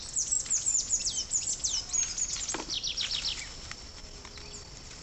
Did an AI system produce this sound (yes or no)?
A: no